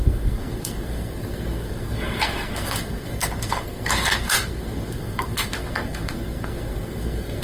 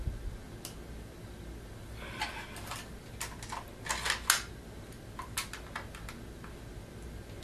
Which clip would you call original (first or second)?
second